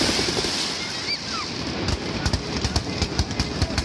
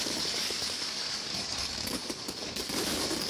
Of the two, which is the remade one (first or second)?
second